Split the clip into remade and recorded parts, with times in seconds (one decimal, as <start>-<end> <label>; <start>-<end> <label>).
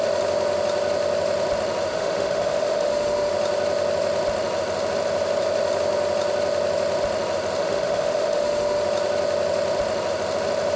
0.0-1.9 recorded; 1.9-3.3 remade; 3.3-7.6 recorded; 7.6-8.8 remade; 8.8-10.8 recorded